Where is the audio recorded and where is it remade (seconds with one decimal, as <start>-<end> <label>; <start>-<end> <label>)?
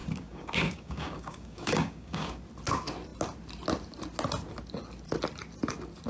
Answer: 0.0-2.4 remade; 2.4-6.1 recorded